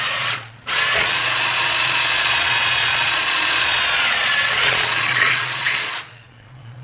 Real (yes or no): no